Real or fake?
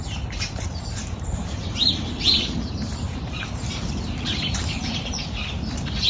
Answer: fake